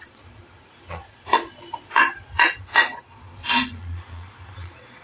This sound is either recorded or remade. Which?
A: remade